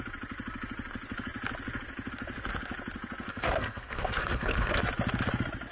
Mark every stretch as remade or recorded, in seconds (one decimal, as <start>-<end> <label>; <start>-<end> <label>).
0.0-3.3 recorded; 3.3-4.8 remade; 4.8-5.7 recorded